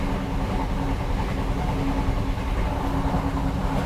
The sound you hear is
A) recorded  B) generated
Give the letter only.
A